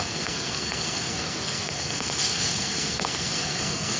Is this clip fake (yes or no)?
yes